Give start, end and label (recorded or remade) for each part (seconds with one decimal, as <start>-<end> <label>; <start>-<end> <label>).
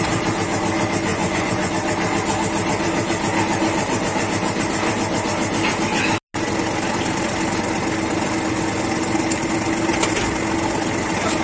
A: 0.0-1.1 recorded; 1.1-1.7 remade; 1.7-11.4 recorded